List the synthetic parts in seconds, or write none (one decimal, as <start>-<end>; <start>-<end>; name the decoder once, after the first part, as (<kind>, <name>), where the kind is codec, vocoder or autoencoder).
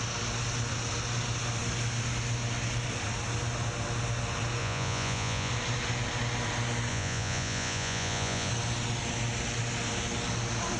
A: 4.6-5.5 (vocoder, Vocos); 6.9-8.5